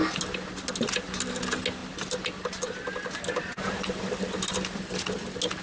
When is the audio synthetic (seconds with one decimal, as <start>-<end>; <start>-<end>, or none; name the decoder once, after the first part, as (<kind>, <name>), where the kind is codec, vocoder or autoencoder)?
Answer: none